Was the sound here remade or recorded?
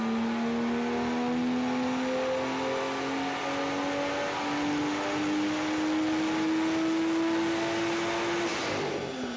recorded